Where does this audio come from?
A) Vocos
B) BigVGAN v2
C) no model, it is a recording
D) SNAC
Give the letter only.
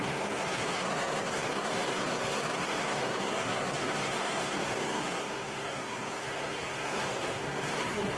D